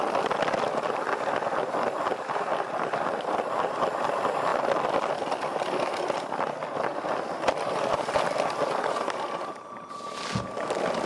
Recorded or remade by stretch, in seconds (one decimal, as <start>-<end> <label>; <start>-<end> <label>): 0.0-11.1 recorded